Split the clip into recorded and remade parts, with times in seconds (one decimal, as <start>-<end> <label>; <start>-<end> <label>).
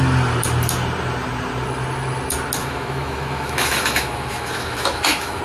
0.0-2.6 recorded; 2.6-5.4 remade